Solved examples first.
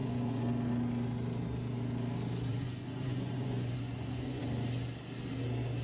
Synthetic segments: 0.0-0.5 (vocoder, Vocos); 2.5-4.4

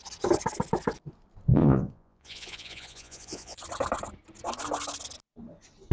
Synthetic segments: 1.5-3.6 (vocoder, Vocos)